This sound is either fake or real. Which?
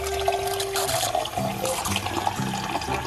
real